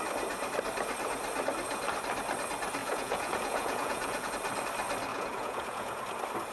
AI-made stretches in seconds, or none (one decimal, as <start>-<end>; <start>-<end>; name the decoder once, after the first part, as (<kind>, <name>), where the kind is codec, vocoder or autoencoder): 2.8-4.3 (vocoder, Vocos); 5.1-6.0